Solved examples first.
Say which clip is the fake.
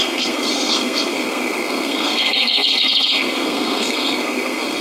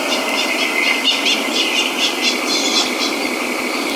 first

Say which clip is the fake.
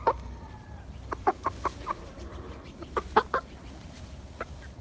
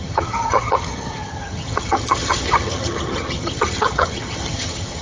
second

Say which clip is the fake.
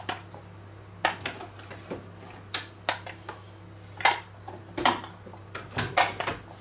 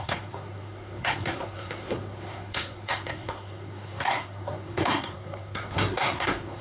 second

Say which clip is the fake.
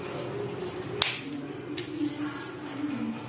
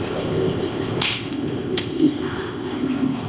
second